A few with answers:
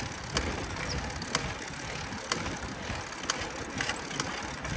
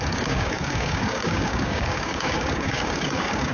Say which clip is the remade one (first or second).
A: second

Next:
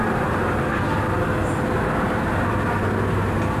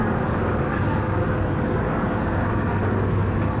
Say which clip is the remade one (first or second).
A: second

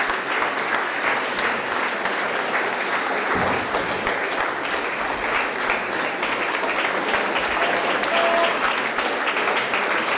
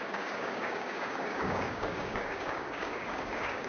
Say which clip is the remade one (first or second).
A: second